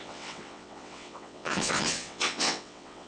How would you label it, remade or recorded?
remade